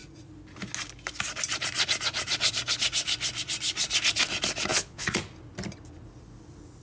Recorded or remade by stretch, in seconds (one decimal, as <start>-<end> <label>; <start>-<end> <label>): 0.0-4.7 recorded; 4.7-5.2 remade; 5.2-6.8 recorded